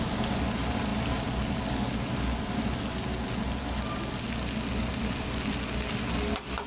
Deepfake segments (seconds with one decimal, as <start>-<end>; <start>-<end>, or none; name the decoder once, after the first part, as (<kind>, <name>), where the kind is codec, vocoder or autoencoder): none